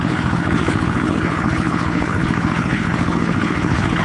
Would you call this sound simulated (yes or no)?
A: yes